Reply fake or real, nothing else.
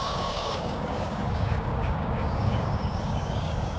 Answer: fake